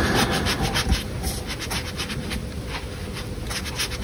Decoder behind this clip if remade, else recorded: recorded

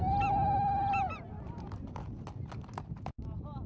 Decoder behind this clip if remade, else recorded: recorded